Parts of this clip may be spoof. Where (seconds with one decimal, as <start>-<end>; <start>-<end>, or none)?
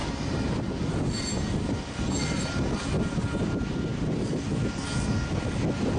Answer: none